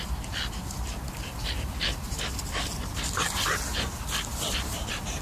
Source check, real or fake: real